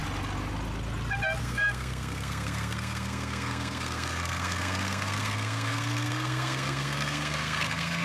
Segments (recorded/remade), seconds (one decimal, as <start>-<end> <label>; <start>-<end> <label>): 0.0-1.4 recorded; 1.4-8.0 remade